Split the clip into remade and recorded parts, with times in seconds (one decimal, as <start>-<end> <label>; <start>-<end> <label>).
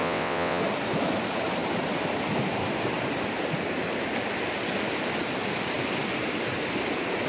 0.0-0.6 remade; 0.6-7.3 recorded